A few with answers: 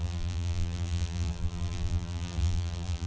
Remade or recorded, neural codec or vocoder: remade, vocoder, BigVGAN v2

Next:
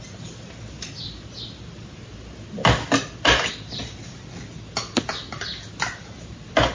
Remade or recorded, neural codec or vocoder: recorded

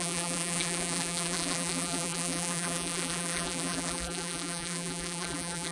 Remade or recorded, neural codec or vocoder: remade, vocoder, BigVGAN v2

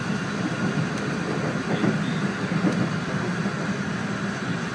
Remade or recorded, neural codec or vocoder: recorded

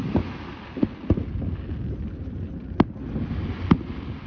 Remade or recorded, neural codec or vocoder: recorded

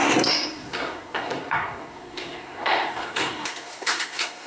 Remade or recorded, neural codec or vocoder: remade, codec, SNAC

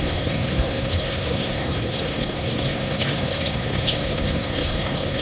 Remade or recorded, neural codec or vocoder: remade, codec, SNAC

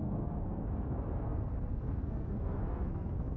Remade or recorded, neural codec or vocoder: remade, codec, SNAC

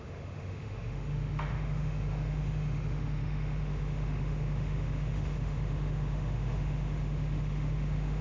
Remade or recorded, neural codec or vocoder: remade, autoencoder, DAC-VAE